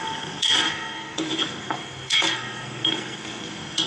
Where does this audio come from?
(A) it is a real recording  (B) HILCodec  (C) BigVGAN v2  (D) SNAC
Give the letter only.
D